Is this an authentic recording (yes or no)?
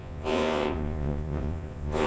no